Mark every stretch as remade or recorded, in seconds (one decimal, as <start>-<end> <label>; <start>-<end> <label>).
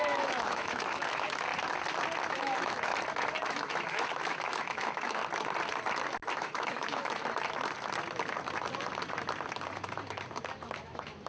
0.0-1.5 remade; 1.5-2.3 recorded; 2.3-2.9 remade; 2.9-3.5 recorded; 3.5-5.2 remade; 5.2-6.3 recorded; 6.3-7.2 remade; 7.2-10.6 recorded; 10.6-11.3 remade